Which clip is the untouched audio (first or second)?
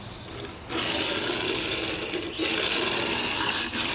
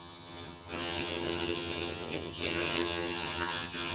first